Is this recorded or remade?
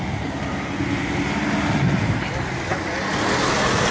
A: recorded